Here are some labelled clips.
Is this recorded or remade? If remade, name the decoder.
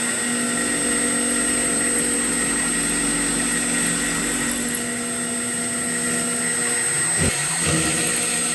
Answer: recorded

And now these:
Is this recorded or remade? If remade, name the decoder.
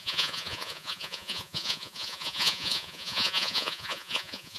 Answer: remade, vocoder, Vocos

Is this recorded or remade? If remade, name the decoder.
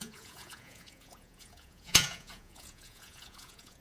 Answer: remade, vocoder, Vocos